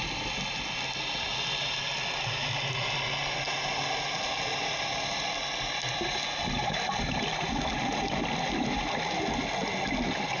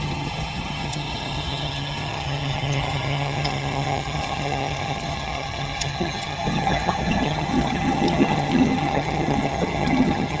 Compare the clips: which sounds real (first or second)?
first